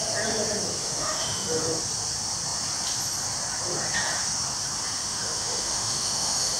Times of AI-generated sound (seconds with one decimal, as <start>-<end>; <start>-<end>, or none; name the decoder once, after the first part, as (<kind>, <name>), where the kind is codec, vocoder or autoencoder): 0.8-1.6 (autoencoder, DAC-VAE); 5.0-6.6